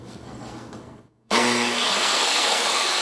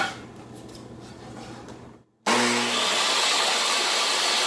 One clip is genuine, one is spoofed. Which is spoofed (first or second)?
first